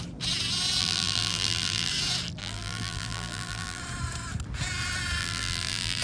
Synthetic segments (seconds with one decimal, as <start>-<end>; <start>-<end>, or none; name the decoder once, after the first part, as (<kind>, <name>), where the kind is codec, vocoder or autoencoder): 0.8-1.9 (vocoder, BigVGAN v2); 2.4-3.8; 5.2-6.0